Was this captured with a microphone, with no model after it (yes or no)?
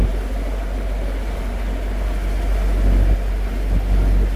yes